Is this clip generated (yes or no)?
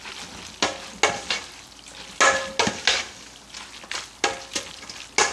no